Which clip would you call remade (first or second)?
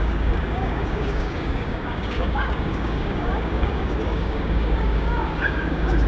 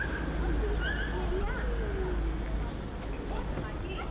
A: first